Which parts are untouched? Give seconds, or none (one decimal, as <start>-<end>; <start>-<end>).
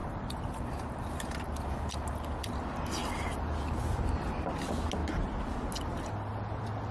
1.3-3.0; 4.3-6.9